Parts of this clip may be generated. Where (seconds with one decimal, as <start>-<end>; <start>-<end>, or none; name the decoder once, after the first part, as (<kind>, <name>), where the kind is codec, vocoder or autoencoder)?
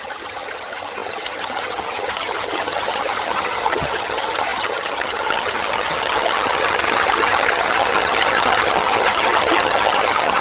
0.0-10.4 (vocoder, HiFi-GAN)